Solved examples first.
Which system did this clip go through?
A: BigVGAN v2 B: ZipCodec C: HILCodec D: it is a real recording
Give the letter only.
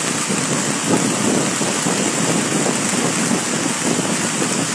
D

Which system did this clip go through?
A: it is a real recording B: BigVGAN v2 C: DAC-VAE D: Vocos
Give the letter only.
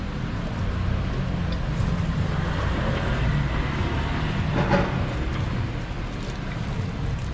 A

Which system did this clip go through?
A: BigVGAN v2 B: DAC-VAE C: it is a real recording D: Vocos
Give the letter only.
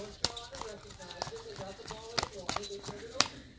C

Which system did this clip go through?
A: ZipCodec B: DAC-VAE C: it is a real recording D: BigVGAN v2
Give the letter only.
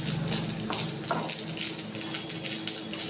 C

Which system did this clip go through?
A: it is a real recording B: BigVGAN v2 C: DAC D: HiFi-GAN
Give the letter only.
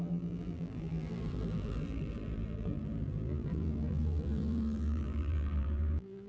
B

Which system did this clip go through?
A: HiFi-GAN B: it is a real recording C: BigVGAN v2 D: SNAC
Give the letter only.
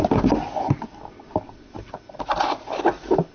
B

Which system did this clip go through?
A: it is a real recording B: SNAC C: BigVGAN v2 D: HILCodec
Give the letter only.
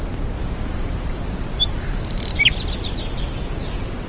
A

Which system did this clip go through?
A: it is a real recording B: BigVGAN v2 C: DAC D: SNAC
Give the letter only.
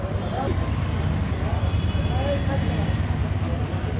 A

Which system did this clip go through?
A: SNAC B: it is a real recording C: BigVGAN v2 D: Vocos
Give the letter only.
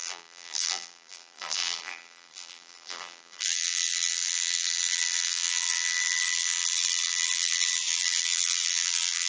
C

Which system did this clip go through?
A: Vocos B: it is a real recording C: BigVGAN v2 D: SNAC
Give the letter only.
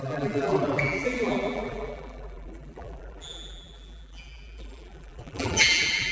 C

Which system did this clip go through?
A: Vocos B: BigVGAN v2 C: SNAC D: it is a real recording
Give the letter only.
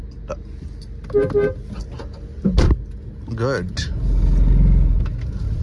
D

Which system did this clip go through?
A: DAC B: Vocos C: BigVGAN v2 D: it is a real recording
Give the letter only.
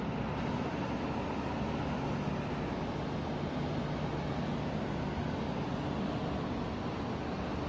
D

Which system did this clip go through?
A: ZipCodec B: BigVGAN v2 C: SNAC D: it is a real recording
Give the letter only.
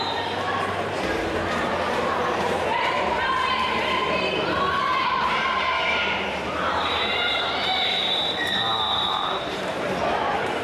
B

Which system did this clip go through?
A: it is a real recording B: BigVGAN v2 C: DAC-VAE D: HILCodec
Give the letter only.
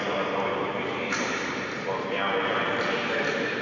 B